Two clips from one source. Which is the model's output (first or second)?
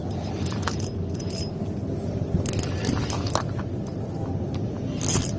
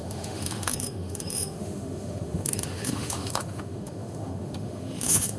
second